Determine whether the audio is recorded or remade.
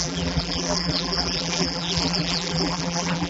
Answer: remade